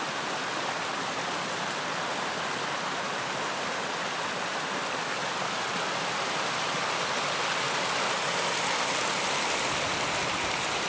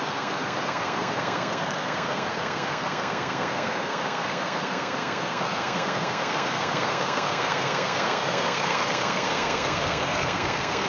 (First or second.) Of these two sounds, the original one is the first